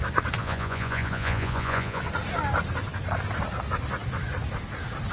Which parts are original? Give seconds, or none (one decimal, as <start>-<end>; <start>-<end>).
0.0-0.4; 2.0-5.1